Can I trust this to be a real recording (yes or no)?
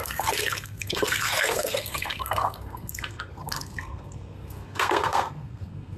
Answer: no